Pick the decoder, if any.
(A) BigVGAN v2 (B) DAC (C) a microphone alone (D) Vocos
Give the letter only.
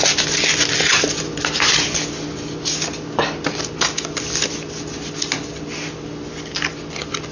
C